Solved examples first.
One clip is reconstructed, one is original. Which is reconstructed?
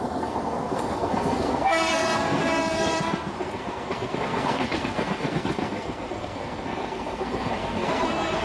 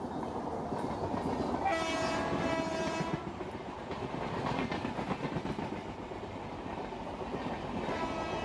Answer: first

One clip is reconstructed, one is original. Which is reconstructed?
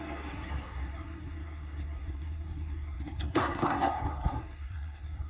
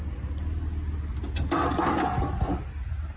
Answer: first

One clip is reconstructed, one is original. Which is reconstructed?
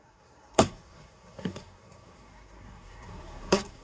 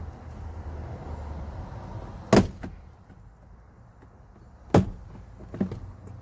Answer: first